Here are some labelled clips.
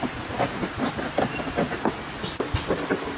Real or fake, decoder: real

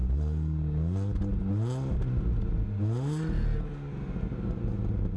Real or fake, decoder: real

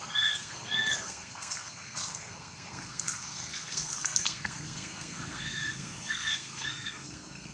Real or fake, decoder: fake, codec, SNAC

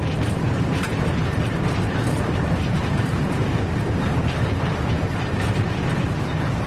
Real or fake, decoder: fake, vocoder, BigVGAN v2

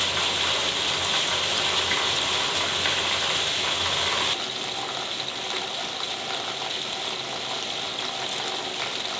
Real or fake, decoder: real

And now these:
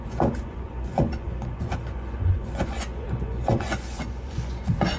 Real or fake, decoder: fake, vocoder, Vocos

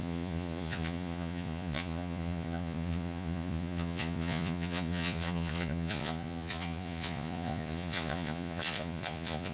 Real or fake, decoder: fake, vocoder, Vocos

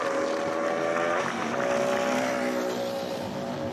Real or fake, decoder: real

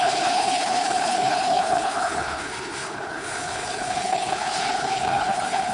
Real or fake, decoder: fake, codec, HILCodec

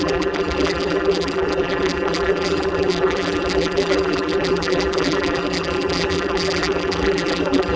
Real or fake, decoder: fake, vocoder, BigVGAN v2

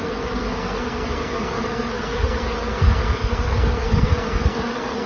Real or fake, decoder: fake, codec, SNAC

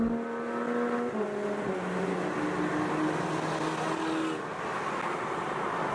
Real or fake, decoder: real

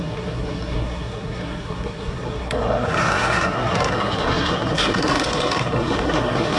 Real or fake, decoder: fake, codec, SNAC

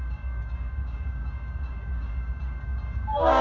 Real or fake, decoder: fake, codec, DAC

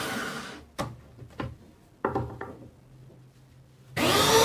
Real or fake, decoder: real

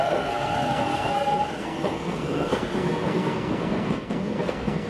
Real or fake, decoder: fake, codec, SNAC